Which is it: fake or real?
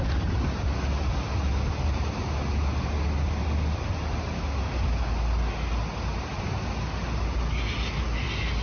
real